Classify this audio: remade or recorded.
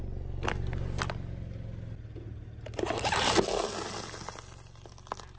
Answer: recorded